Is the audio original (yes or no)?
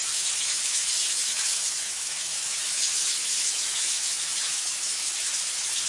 no